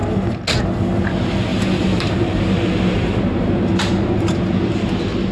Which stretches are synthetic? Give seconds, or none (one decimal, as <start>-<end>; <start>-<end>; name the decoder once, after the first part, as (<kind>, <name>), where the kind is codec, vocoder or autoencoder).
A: 1.5-4.7 (vocoder, BigVGAN v2)